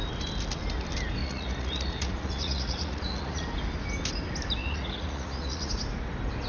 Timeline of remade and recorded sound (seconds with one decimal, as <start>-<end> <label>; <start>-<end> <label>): 0.0-1.2 recorded; 1.2-3.4 remade; 3.4-4.6 recorded; 4.6-5.7 remade; 5.7-6.5 recorded